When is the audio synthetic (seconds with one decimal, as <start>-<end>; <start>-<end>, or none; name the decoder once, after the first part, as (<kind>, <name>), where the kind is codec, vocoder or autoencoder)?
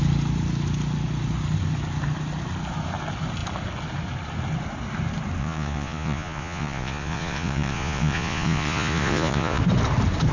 5.4-9.6 (vocoder, Vocos)